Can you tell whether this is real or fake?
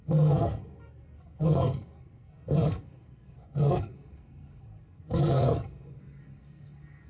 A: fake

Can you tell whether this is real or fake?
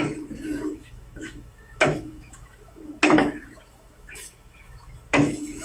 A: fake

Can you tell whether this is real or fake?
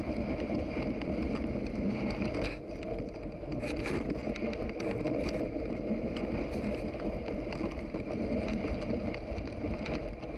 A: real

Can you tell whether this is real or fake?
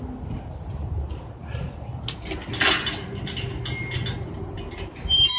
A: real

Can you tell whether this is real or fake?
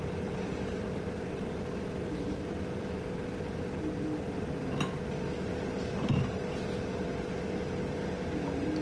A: real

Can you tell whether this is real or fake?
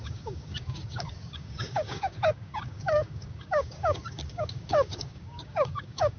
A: fake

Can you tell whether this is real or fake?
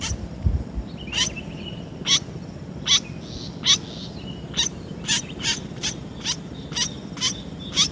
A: real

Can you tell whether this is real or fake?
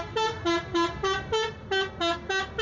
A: real